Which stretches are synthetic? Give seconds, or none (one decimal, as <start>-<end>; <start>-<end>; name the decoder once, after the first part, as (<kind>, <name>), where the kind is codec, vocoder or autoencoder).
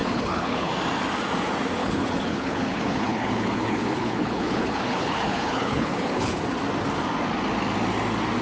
0.0-0.7 (codec, HILCodec); 1.8-6.4